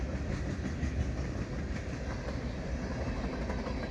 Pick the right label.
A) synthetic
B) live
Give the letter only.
B